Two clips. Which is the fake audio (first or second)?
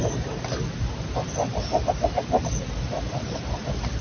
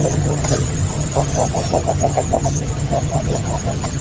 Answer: second